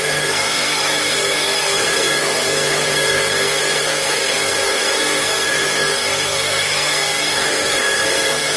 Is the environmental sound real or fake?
fake